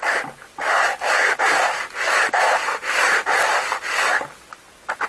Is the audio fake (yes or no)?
no